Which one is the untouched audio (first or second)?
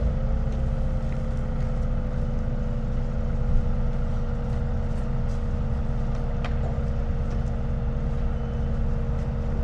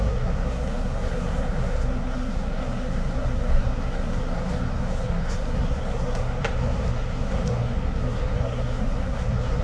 first